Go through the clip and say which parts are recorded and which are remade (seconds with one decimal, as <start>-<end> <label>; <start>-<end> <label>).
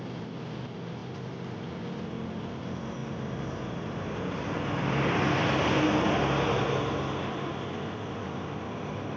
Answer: 0.0-3.0 recorded; 3.0-4.9 remade; 4.9-9.2 recorded